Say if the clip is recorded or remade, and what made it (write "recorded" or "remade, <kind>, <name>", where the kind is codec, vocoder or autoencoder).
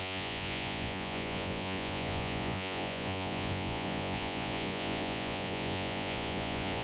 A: remade, vocoder, Vocos